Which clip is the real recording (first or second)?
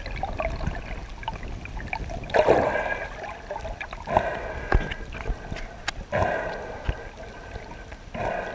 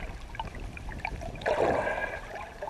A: first